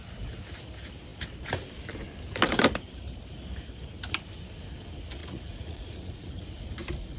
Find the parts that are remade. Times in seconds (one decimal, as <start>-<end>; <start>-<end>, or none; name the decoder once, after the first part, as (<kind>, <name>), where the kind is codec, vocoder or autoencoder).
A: 5.2-6.2 (vocoder, Vocos)

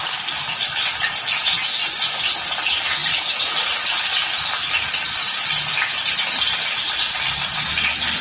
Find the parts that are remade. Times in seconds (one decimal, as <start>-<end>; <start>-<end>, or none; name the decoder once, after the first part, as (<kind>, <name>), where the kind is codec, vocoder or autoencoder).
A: 1.8-2.3 (vocoder, Vocos)

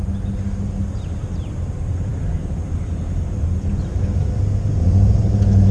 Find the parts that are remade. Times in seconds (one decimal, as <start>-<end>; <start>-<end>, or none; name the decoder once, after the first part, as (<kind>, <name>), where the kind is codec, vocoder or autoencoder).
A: none